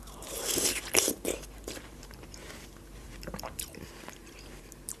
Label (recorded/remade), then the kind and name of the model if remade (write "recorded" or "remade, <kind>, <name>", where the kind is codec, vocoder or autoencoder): remade, vocoder, BigVGAN v2